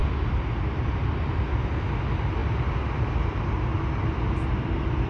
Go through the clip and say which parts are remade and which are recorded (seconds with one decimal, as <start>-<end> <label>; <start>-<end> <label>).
0.0-5.1 recorded